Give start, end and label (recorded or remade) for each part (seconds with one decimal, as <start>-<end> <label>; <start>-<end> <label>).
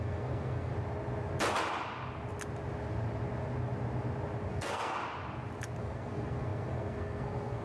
0.0-0.7 remade; 0.7-4.5 recorded; 4.5-5.0 remade; 5.0-5.8 recorded; 5.8-7.6 remade